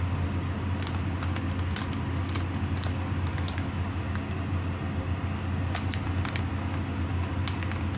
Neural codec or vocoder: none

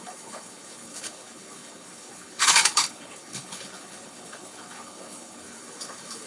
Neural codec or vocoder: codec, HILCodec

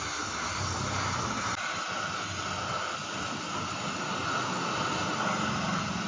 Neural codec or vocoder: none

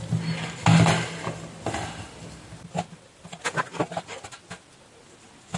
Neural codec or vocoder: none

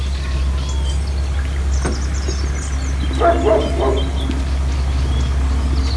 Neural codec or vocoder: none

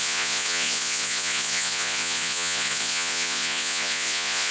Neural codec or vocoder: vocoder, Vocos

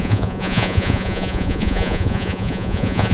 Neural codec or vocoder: vocoder, Vocos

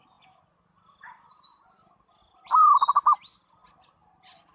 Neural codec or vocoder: none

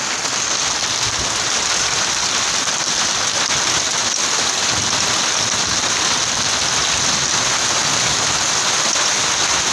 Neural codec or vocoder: none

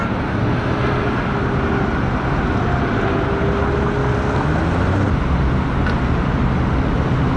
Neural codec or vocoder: none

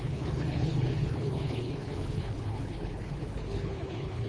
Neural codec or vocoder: codec, HILCodec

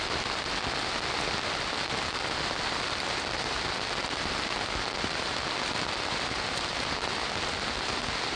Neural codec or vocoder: none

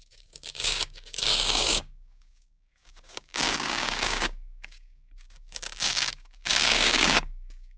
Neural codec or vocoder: codec, DAC